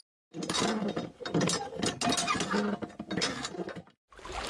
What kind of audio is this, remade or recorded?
recorded